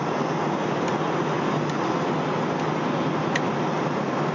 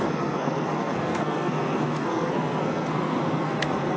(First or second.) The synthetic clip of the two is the second